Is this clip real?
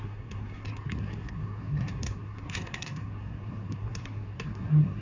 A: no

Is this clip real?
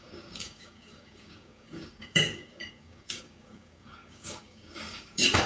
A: no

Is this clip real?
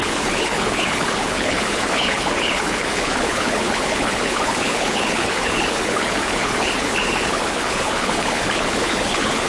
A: no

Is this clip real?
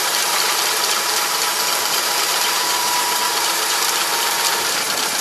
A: no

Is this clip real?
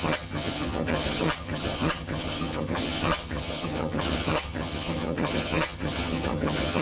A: no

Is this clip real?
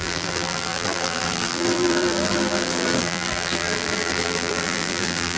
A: no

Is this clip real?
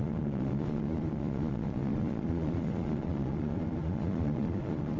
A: no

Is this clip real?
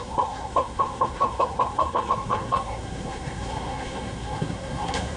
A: no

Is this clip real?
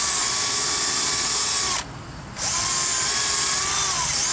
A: yes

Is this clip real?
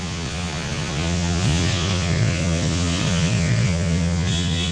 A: no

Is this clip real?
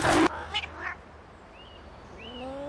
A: yes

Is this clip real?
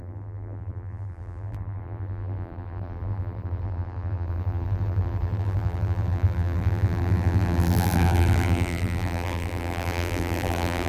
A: no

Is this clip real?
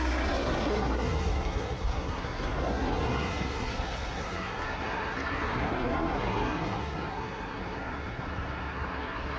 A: no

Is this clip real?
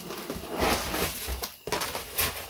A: yes